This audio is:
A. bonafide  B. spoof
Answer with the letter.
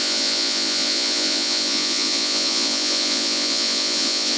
B